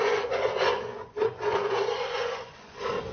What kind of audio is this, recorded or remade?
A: remade